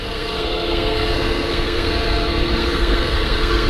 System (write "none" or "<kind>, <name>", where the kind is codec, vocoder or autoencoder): codec, SNAC